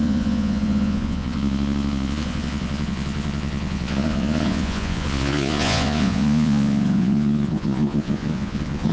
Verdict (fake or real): fake